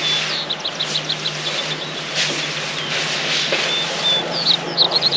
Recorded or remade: recorded